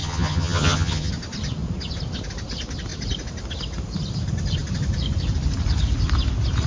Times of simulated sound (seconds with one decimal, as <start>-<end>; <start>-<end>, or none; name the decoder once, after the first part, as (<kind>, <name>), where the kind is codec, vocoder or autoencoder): 0.0-1.1 (vocoder, HiFi-GAN)